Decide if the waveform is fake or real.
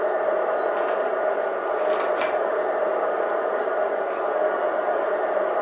real